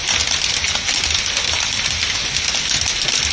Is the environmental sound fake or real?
real